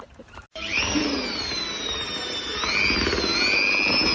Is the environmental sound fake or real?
real